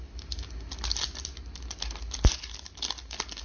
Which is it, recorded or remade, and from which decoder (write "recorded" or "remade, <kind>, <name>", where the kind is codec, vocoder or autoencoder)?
recorded